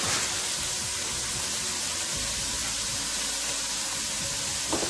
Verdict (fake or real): real